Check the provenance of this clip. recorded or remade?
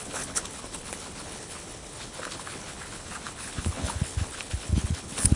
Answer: remade